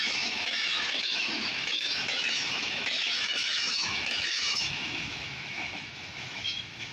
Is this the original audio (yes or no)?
no